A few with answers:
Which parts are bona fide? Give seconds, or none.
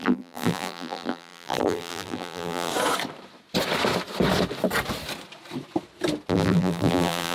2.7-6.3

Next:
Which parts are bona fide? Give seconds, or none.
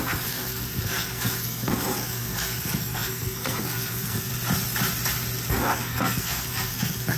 4.3-5.5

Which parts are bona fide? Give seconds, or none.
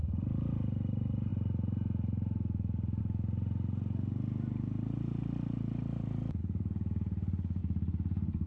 0.0-6.4; 7.6-8.5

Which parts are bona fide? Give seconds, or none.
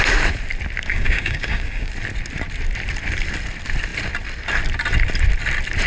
0.0-0.9; 1.9-5.9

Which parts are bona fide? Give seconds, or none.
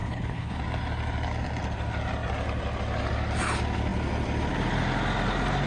0.6-5.7